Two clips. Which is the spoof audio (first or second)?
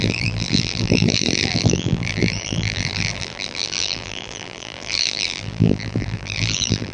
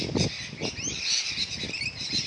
first